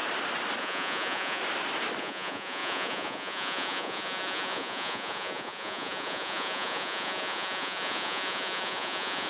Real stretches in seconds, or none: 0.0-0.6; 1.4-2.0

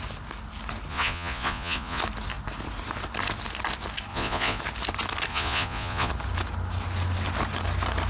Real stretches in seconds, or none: 0.0-0.9; 2.0-4.1; 4.6-5.3; 6.1-8.1